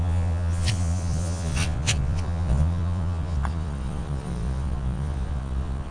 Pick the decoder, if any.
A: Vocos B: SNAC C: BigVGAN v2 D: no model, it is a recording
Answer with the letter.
A